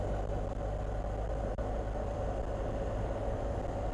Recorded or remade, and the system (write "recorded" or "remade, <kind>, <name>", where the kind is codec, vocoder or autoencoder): recorded